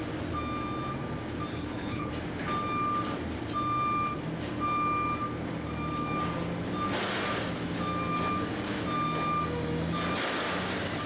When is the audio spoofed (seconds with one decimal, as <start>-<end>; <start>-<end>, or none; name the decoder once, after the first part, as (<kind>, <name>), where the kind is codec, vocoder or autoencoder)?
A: 1.5-2.1 (codec, HILCodec)